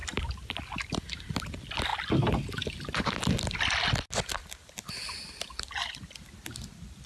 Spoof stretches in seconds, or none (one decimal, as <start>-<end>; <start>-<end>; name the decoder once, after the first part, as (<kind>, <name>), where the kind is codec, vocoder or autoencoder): none